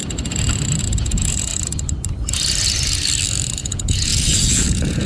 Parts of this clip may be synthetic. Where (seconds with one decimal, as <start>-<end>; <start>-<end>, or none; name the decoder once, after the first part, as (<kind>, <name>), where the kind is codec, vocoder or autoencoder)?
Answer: 0.8-1.5 (vocoder, Vocos); 3.6-5.1